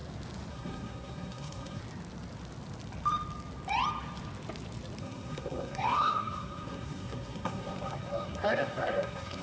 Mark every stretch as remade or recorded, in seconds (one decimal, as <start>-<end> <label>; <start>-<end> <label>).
0.0-0.5 recorded; 0.5-1.8 remade; 1.8-5.0 recorded; 5.0-9.4 remade